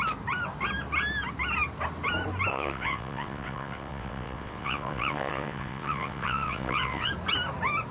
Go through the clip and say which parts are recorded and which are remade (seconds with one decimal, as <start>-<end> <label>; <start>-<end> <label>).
0.0-2.5 recorded; 2.5-7.1 remade; 7.1-7.9 recorded

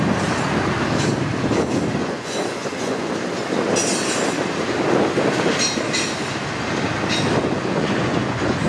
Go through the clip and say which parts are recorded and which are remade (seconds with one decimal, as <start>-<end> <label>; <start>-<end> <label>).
0.0-2.0 recorded; 2.0-3.1 remade; 3.1-7.4 recorded; 7.4-8.7 remade

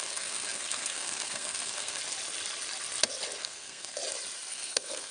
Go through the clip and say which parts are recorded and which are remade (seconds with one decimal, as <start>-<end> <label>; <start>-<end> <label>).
0.0-2.0 remade; 2.0-3.4 recorded; 3.4-4.0 remade; 4.0-4.5 recorded; 4.5-5.1 remade

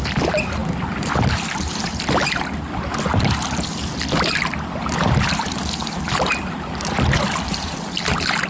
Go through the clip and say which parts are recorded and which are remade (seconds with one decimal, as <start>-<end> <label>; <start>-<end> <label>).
0.0-8.5 recorded

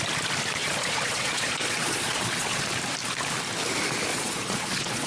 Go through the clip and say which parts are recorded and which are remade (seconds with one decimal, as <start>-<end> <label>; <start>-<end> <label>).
0.0-0.6 recorded; 0.6-2.6 remade; 2.6-4.1 recorded; 4.1-5.1 remade

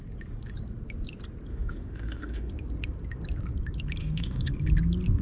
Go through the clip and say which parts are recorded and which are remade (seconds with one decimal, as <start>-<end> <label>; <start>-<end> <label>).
0.0-1.5 recorded; 1.5-2.5 remade; 2.5-4.0 recorded; 4.0-4.5 remade; 4.5-5.2 recorded